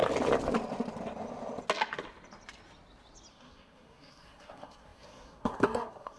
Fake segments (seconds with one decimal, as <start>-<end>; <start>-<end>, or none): 3.3-6.2